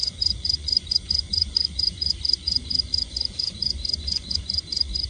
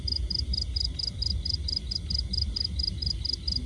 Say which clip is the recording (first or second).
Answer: second